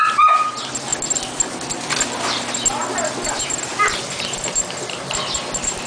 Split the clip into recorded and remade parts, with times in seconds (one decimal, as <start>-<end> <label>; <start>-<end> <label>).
0.0-5.9 recorded